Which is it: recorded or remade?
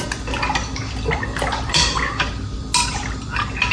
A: recorded